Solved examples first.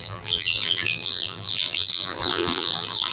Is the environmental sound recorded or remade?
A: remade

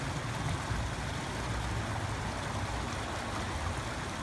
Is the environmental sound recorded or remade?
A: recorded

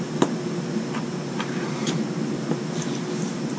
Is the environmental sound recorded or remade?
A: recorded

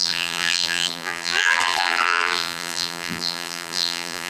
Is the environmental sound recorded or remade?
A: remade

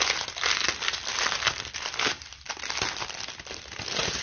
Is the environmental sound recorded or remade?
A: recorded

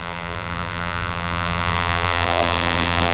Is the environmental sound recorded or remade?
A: remade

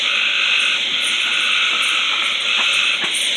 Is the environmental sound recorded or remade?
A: recorded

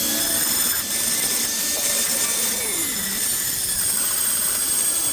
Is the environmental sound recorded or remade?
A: recorded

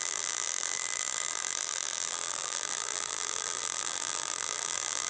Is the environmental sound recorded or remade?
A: remade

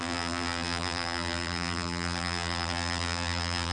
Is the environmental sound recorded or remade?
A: remade